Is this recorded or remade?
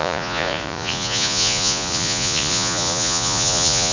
remade